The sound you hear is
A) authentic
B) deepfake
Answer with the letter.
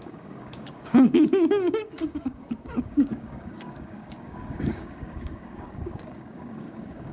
B